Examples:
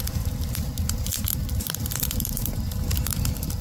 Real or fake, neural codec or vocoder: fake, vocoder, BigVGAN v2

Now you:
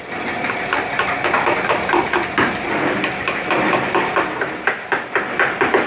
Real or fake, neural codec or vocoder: real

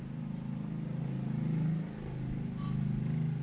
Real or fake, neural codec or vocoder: real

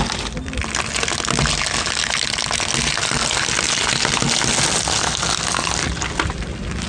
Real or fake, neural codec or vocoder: real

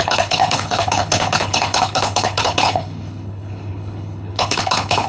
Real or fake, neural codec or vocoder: fake, codec, HILCodec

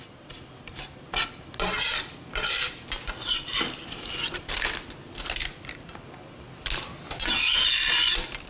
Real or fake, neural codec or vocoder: real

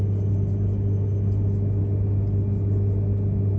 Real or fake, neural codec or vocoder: real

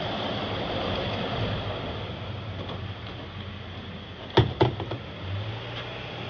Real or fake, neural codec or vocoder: real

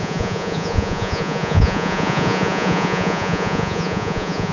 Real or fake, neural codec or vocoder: fake, vocoder, Vocos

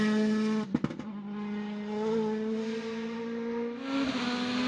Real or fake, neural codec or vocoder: real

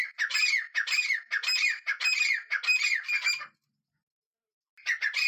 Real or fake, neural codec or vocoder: real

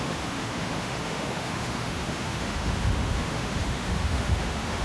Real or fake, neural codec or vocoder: fake, autoencoder, DAC-VAE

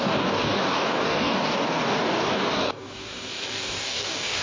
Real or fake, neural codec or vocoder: fake, codec, DAC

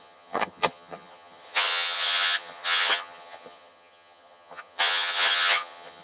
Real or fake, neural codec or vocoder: fake, vocoder, HiFi-GAN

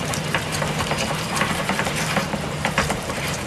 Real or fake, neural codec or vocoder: fake, vocoder, BigVGAN v2